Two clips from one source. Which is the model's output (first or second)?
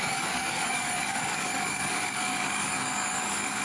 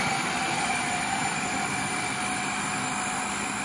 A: first